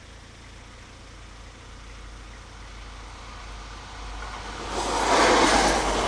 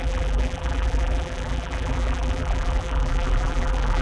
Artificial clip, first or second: second